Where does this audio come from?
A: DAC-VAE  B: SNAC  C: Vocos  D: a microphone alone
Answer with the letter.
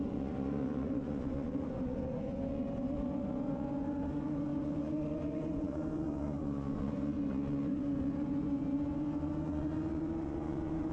C